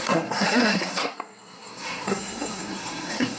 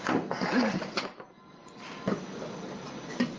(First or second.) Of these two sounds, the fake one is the first